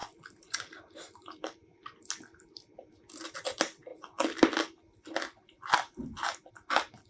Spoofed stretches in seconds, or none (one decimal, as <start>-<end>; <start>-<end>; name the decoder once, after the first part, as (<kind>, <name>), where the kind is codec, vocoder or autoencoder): none